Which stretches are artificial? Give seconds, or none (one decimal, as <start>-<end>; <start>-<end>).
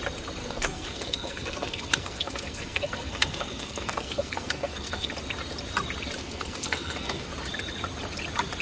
0.4-5.1; 6.2-7.3